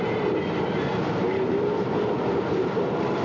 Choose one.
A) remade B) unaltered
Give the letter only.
A